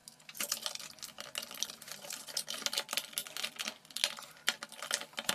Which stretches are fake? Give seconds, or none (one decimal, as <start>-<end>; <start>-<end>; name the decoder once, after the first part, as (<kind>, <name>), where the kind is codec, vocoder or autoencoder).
none